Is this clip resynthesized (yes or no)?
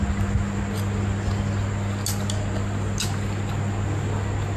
no